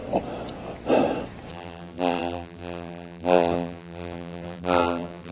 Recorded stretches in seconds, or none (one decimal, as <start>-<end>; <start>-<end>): 0.0-1.5